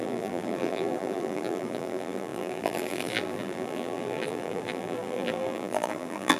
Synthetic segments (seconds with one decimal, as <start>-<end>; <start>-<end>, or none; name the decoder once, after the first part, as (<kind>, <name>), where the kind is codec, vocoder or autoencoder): 0.0-6.4 (vocoder, BigVGAN v2)